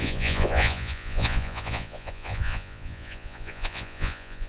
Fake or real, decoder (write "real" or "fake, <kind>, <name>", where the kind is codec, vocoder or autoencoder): fake, vocoder, Vocos